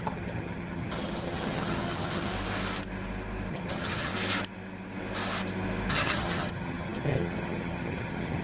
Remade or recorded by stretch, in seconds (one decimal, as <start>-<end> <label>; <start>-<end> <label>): 0.0-2.3 remade; 2.3-3.5 recorded; 3.5-4.1 remade; 4.1-5.9 recorded; 5.9-8.4 remade